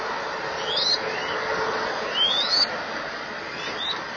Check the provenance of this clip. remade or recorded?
recorded